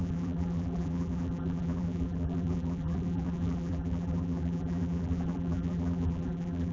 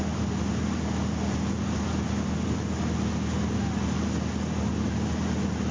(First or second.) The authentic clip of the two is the second